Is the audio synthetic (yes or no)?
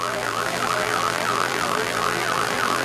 yes